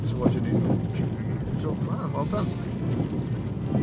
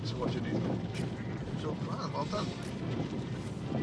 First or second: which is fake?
second